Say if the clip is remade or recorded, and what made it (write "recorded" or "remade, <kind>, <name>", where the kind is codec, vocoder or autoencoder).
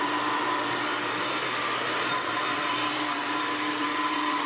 remade, vocoder, BigVGAN v2